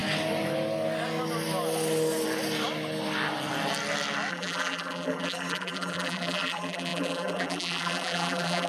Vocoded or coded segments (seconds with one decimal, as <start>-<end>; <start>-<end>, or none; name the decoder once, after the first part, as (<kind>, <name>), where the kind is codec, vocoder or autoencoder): 4.3-8.7 (vocoder, BigVGAN v2)